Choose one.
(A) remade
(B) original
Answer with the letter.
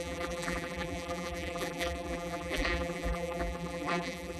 A